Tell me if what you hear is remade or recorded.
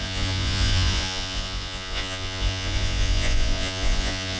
remade